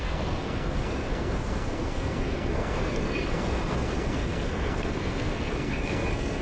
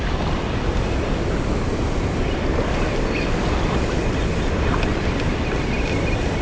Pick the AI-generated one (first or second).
first